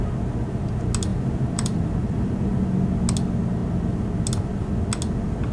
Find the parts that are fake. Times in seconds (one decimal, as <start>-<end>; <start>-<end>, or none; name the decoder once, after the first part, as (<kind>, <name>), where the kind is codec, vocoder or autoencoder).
1.1-2.5 (vocoder, BigVGAN v2)